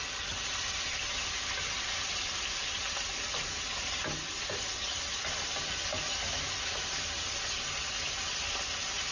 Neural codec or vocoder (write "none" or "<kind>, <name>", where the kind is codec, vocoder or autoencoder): none